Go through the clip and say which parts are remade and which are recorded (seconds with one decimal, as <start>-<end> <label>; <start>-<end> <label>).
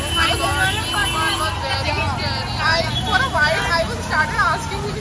0.0-5.0 recorded